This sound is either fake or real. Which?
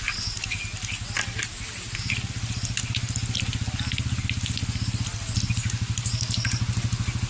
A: real